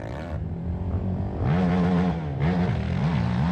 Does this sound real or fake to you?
real